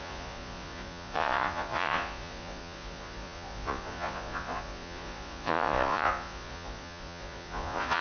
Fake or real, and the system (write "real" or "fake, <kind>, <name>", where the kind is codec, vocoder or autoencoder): fake, vocoder, Vocos